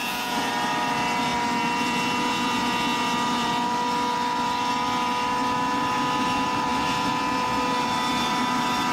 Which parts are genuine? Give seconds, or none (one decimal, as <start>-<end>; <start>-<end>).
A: 0.5-8.9